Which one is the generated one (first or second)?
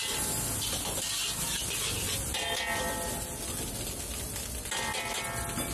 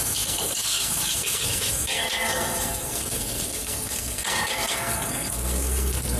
second